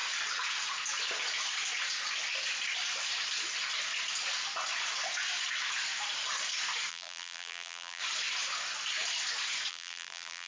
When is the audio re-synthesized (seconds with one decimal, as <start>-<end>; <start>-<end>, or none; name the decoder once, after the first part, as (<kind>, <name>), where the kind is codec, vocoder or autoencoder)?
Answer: 6.9-8.0 (vocoder, BigVGAN v2); 9.7-10.5